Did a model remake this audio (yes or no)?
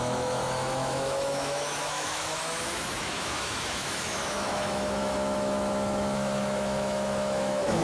yes